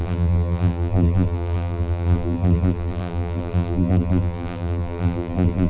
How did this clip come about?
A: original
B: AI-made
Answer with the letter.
B